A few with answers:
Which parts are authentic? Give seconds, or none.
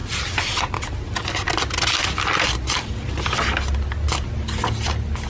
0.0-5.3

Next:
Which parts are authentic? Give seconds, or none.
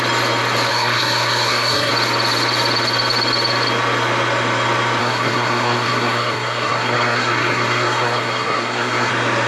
0.0-0.7; 1.9-5.0; 9.1-9.5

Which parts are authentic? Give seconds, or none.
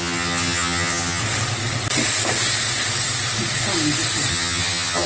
1.2-4.3